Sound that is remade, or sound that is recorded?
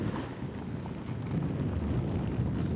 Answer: recorded